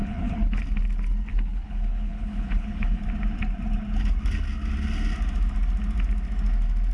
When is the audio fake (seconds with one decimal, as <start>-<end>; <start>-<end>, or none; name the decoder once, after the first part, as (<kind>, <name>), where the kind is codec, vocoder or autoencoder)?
0.0-0.6 (codec, HILCodec); 1.3-3.0